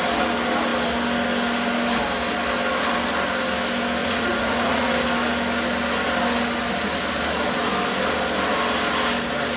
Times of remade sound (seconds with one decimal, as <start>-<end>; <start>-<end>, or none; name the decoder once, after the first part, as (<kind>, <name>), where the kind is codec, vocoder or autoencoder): 4.0-4.9 (vocoder, Vocos)